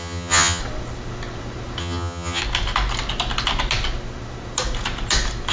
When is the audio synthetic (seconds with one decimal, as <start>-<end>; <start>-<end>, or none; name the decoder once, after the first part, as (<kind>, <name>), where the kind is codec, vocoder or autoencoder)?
0.0-0.6 (vocoder, HiFi-GAN); 1.8-2.4